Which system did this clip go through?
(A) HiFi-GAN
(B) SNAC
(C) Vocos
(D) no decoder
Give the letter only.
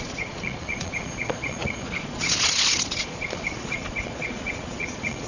C